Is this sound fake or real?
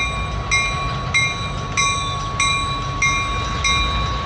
real